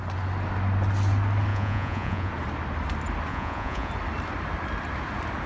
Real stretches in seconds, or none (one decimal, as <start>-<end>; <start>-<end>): 0.0-1.5; 2.3-3.3; 3.9-5.5